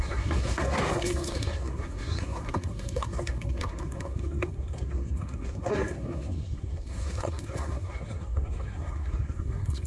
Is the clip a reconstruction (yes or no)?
yes